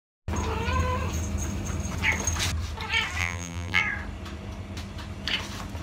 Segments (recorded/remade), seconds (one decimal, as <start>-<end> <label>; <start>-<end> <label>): 0.0-3.2 recorded; 3.2-3.8 remade; 3.8-5.8 recorded